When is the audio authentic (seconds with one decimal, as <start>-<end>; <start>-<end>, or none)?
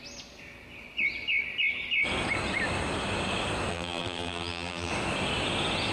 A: 0.0-3.7; 4.9-5.9